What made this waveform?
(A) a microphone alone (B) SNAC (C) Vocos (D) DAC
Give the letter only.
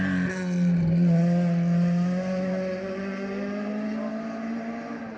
A